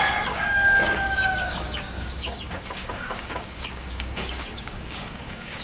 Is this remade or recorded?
remade